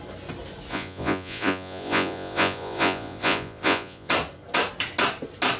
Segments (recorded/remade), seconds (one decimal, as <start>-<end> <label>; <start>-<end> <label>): 0.0-0.7 recorded; 0.7-4.1 remade; 4.1-5.6 recorded